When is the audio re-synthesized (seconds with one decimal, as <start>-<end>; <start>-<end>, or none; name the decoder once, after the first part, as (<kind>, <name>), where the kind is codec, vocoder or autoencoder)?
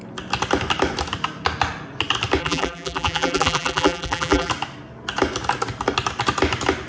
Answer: 2.4-4.5 (vocoder, BigVGAN v2)